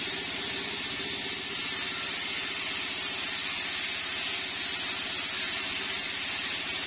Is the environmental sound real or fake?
real